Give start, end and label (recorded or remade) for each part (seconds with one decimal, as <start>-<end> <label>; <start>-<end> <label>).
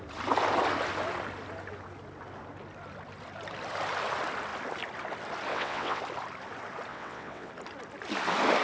0.0-5.5 recorded; 5.5-6.0 remade; 6.0-6.9 recorded; 6.9-7.5 remade; 7.5-8.6 recorded